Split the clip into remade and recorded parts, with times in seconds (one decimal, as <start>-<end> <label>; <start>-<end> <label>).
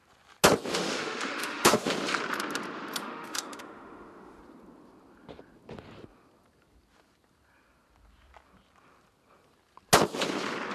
0.0-0.7 recorded; 0.7-1.9 remade; 1.9-3.0 recorded; 3.0-4.4 remade; 4.4-10.7 recorded